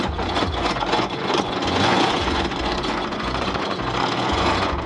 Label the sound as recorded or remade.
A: remade